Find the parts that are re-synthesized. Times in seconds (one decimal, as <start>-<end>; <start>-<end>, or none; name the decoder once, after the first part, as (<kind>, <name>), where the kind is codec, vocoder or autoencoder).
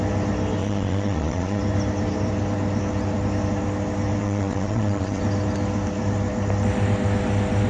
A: 0.6-1.6 (vocoder, Vocos); 4.2-5.2